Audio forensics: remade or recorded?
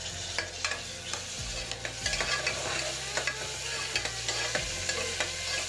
recorded